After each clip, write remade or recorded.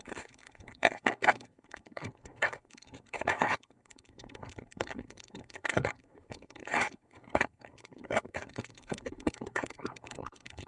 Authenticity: remade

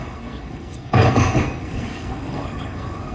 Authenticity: remade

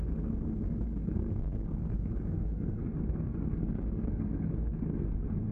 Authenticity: remade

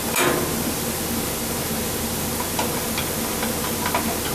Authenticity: recorded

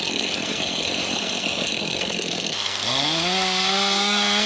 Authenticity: remade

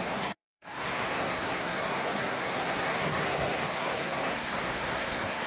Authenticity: remade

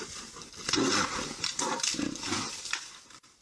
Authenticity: recorded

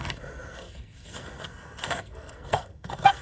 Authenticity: remade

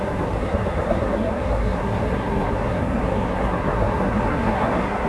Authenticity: remade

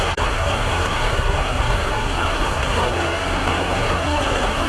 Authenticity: remade